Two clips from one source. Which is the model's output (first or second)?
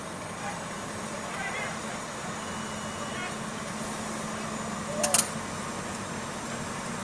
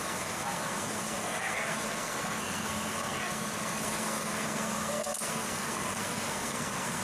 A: second